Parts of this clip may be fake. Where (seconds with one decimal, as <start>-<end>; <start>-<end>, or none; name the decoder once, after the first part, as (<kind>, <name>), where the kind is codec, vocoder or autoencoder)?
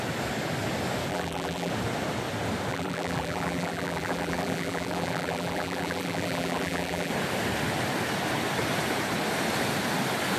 1.1-1.7 (vocoder, BigVGAN v2); 2.7-7.1